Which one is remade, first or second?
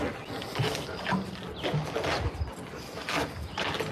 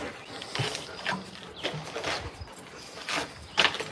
second